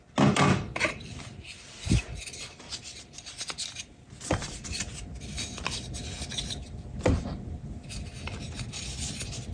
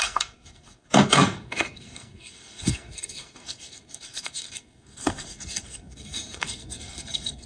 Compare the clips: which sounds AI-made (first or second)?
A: second